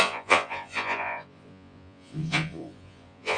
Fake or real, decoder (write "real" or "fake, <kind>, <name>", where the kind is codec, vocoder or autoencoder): fake, vocoder, Vocos